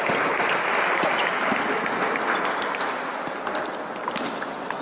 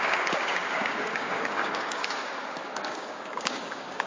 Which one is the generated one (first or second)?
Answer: second